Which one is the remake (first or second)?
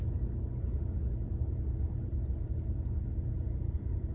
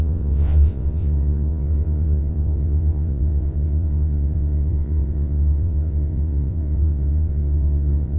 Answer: second